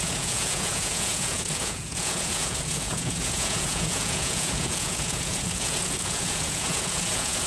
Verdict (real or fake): fake